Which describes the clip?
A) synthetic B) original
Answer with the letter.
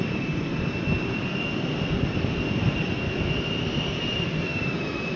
B